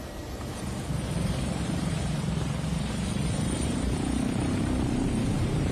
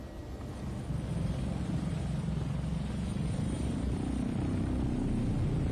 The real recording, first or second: second